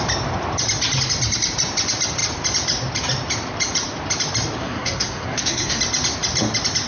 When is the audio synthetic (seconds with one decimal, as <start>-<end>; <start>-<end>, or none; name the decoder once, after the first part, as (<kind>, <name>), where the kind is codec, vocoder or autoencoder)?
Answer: 4.6-5.8 (codec, SNAC)